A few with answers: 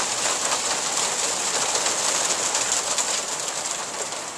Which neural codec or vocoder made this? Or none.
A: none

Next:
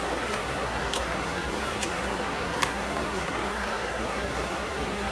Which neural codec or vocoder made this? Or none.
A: codec, SNAC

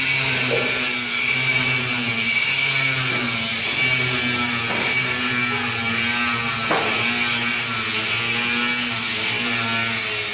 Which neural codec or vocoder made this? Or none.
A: none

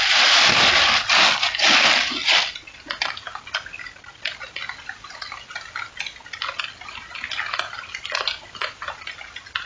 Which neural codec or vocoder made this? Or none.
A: none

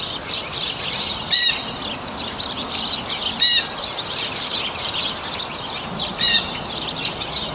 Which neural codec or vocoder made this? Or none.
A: none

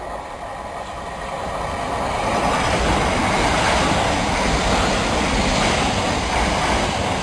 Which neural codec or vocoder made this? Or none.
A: none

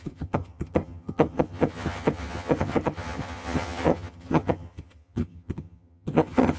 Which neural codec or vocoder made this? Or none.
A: vocoder, HiFi-GAN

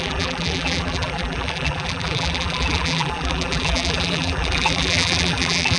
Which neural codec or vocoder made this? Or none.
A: vocoder, BigVGAN v2